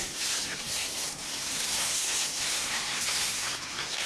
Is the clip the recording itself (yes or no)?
no